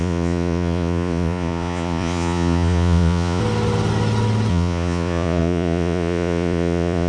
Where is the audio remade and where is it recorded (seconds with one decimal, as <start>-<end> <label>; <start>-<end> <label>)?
0.0-3.4 remade; 3.4-4.5 recorded; 4.5-7.1 remade